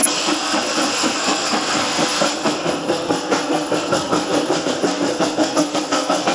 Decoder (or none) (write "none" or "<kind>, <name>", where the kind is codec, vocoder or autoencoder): codec, SNAC